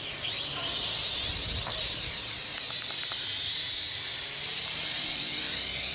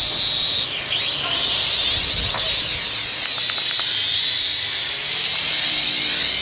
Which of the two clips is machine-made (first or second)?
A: first